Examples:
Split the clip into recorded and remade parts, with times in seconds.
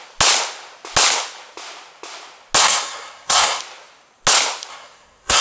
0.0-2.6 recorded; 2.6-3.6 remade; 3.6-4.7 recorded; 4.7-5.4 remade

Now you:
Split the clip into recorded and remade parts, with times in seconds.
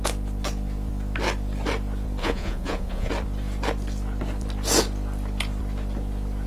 0.0-2.2 recorded; 2.2-3.1 remade; 3.1-6.5 recorded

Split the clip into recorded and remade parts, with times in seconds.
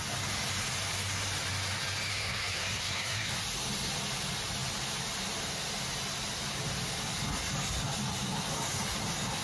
0.0-2.1 recorded; 2.1-3.3 remade; 3.3-9.4 recorded